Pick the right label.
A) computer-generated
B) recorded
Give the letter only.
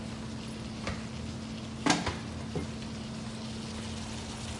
B